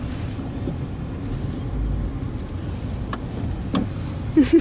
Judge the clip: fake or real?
real